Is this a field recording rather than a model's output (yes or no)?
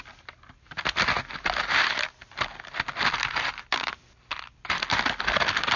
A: yes